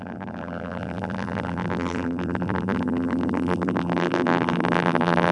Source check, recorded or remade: remade